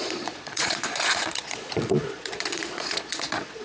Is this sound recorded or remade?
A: remade